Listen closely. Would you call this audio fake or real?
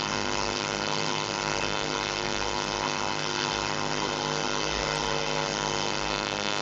fake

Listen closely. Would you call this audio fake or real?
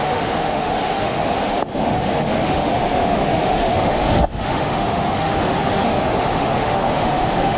fake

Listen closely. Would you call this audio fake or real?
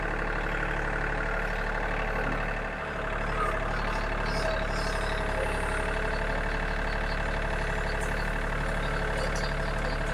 real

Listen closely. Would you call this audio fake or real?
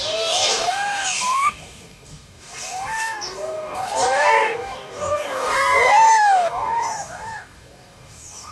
fake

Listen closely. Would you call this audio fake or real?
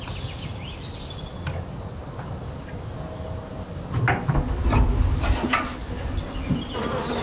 real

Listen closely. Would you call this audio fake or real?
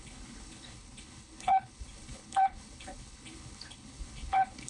fake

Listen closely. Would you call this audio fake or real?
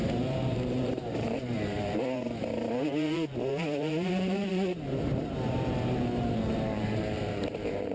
fake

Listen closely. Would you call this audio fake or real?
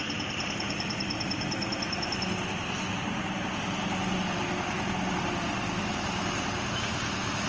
real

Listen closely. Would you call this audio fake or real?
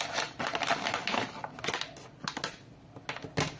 real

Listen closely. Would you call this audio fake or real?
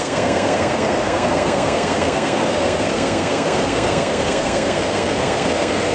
fake